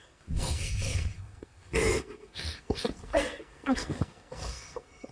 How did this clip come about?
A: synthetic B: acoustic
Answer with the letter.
A